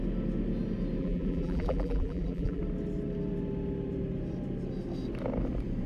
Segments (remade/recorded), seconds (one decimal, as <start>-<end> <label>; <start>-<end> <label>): 0.0-1.0 recorded; 1.0-2.6 remade; 2.6-5.9 recorded